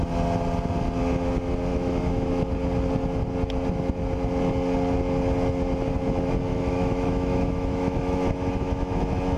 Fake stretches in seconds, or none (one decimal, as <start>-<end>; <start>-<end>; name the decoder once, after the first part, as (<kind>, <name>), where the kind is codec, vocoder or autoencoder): 1.7-2.4 (autoencoder, DAC-VAE); 6.5-9.0